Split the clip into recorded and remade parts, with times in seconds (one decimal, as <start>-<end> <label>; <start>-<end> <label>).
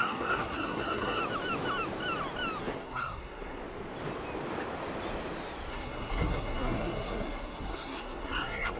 0.0-1.2 remade; 1.2-2.6 recorded; 2.6-3.6 remade; 3.6-5.7 recorded; 5.7-8.8 remade